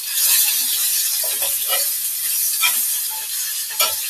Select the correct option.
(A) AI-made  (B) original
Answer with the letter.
B